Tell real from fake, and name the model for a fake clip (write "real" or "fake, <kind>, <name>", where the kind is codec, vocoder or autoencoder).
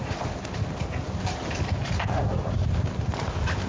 real